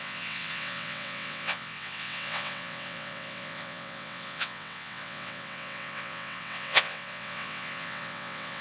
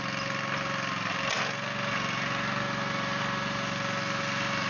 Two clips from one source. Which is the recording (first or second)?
second